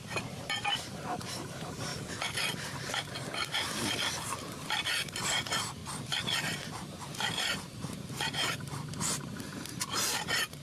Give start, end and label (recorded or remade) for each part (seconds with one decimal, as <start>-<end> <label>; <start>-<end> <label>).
0.0-1.9 remade; 1.9-4.3 recorded; 4.3-5.8 remade; 5.8-6.4 recorded; 6.4-10.6 remade